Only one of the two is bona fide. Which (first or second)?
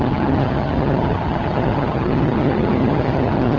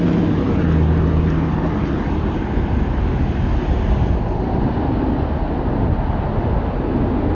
second